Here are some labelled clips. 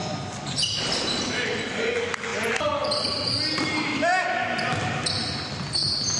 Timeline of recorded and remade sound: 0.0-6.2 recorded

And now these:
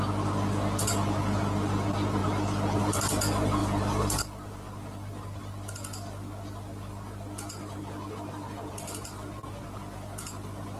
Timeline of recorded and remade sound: 0.0-10.8 recorded

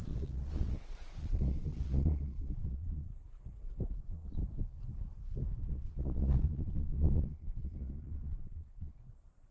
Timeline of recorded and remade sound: 0.0-3.1 remade; 3.1-4.0 recorded; 4.0-4.4 remade; 4.4-5.6 recorded; 5.6-9.5 remade

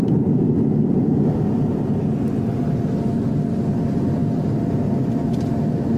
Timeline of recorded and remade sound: 0.0-4.2 recorded; 4.2-5.5 remade; 5.5-6.0 recorded

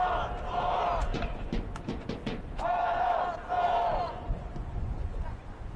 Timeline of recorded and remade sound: 0.0-1.1 recorded; 1.1-3.0 remade; 3.0-3.8 recorded; 3.8-5.8 remade

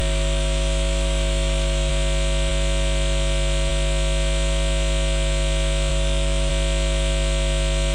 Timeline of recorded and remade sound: 0.0-1.9 remade; 1.9-5.9 recorded; 5.9-6.5 remade; 6.5-7.9 recorded

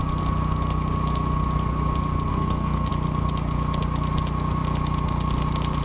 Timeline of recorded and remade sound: 0.0-2.3 recorded; 2.3-2.9 remade; 2.9-5.8 recorded

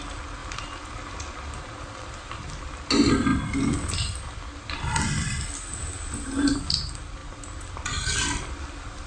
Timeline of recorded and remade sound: 0.0-0.4 recorded; 0.4-2.6 remade; 2.6-9.1 recorded